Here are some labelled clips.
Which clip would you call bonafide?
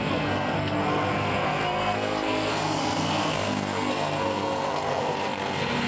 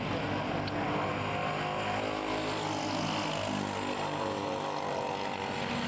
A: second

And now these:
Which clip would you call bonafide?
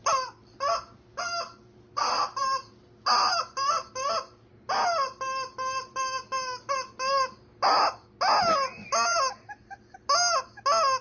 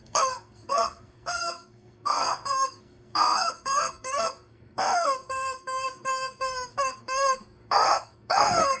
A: first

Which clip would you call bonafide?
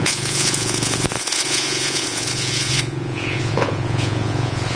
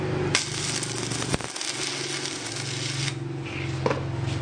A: second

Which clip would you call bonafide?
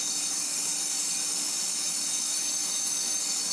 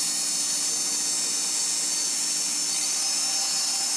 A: second